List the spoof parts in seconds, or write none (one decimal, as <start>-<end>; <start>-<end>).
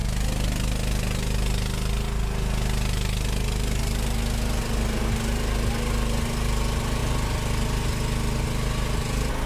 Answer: none